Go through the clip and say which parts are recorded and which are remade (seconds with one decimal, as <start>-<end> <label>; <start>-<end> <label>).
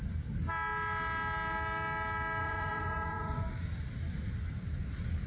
0.0-2.4 recorded; 2.4-3.5 remade; 3.5-5.3 recorded